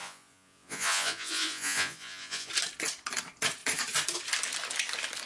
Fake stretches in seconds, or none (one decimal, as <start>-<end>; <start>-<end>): 0.0-2.5